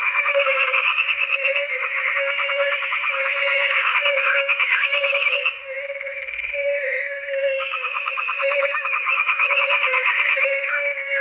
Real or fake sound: fake